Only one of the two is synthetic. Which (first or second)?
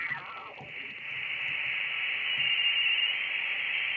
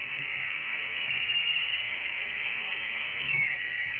second